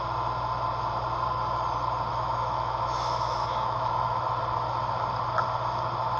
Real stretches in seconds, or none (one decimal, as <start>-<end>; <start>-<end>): 0.0-2.1; 4.4-6.2